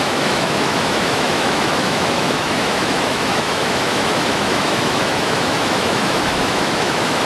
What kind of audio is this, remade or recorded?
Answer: remade